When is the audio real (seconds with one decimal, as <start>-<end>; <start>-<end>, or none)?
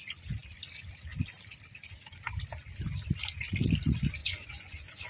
0.0-4.2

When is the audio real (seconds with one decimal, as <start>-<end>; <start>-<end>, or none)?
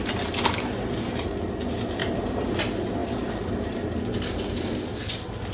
0.0-2.0; 2.6-3.0; 4.0-5.5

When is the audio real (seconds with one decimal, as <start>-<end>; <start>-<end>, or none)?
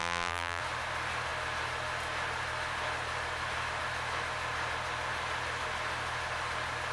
0.6-6.9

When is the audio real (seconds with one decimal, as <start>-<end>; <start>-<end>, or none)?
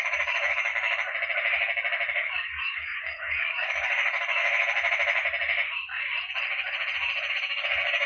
0.7-2.1; 4.4-7.3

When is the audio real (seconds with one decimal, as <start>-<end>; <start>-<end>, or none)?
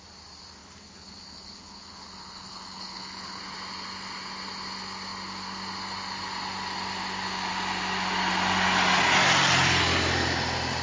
0.0-0.6; 3.4-10.8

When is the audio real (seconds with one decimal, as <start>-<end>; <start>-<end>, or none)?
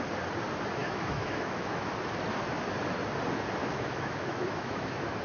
0.0-0.8; 1.9-3.6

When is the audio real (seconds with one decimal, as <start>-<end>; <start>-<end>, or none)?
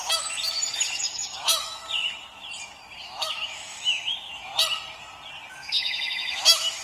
0.0-0.7; 1.8-3.0; 4.5-5.5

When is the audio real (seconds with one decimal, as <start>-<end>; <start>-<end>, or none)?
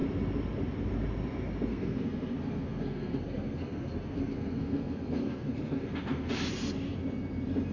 0.0-1.7; 6.3-7.7